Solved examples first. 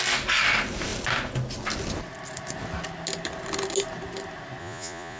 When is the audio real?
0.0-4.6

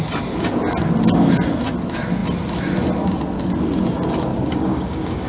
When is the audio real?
0.0-4.3

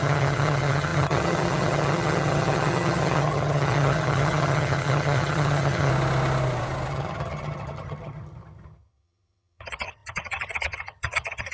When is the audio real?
5.9-6.9

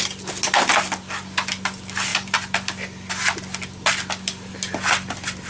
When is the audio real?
0.0-5.5

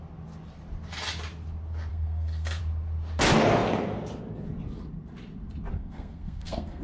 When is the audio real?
0.0-1.9; 2.6-5.7

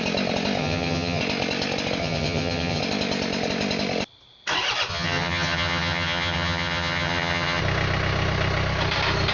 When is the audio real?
0.0-0.6; 1.2-2.0; 2.8-4.9; 7.6-9.3

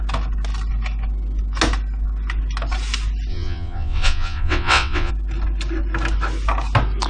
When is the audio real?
0.0-3.3; 5.1-7.1